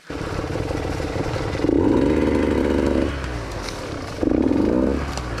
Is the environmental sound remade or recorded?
recorded